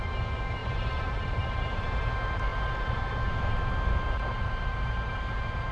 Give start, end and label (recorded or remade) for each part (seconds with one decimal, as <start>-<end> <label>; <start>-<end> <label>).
0.0-0.6 recorded; 0.6-2.0 remade; 2.0-2.5 recorded; 2.5-3.1 remade; 3.1-4.3 recorded; 4.3-5.7 remade